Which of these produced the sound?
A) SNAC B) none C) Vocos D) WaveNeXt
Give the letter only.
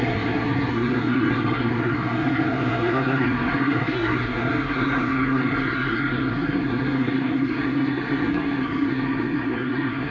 A